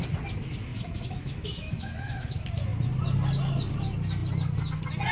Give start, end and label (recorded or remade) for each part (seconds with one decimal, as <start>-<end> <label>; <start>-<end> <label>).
0.0-0.7 recorded; 0.7-2.3 remade; 2.3-5.1 recorded